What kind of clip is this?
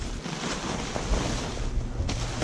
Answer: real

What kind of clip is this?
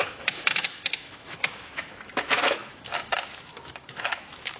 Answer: fake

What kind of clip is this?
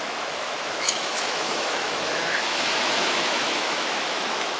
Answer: fake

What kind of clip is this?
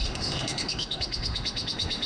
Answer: fake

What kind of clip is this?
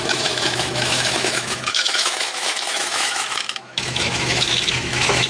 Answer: fake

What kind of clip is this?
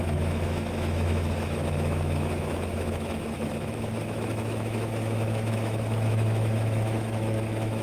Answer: fake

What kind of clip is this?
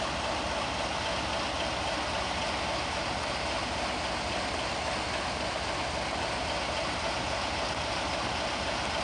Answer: real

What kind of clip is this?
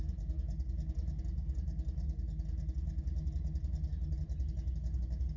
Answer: real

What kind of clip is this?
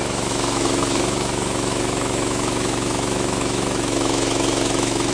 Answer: fake